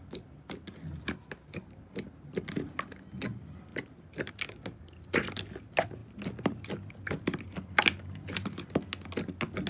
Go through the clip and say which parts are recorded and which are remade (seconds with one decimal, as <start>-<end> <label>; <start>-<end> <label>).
0.0-3.7 recorded; 3.7-4.3 remade; 4.3-9.7 recorded